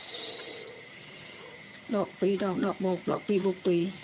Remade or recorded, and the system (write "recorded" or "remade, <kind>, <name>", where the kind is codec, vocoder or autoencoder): remade, vocoder, HiFi-GAN